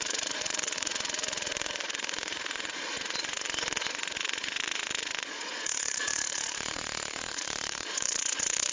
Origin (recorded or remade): remade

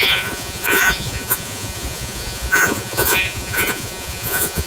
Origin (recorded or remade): remade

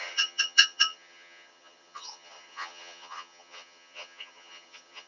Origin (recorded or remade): remade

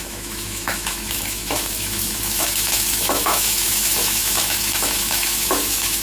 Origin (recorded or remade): remade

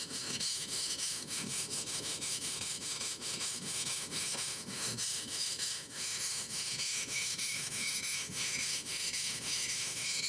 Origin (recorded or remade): remade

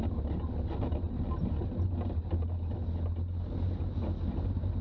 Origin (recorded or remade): recorded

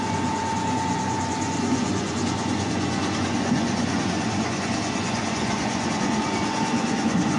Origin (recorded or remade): remade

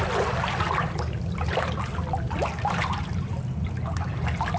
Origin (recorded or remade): recorded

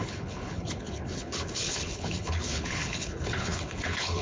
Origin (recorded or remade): remade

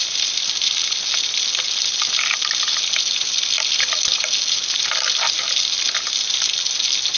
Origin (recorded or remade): recorded